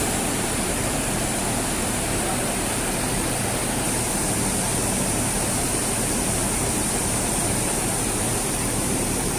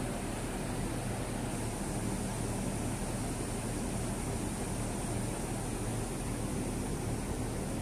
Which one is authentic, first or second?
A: second